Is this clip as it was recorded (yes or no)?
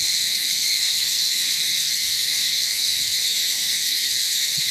no